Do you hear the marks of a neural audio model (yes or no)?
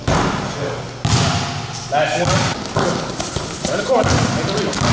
no